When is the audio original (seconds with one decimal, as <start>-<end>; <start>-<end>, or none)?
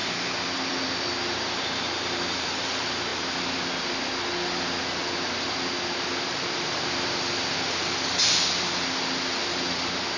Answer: 0.0-10.2